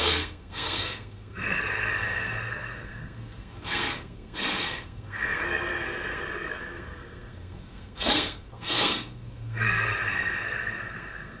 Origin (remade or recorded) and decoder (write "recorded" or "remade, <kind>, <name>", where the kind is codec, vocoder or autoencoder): remade, codec, SNAC